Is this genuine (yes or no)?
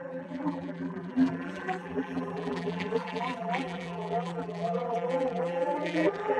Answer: no